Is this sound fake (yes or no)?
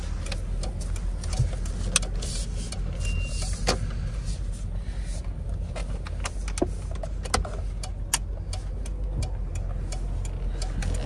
no